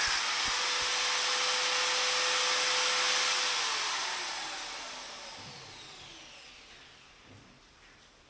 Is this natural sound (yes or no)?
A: yes